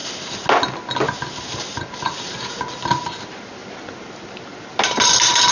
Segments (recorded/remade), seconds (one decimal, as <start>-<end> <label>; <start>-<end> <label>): 0.0-5.5 recorded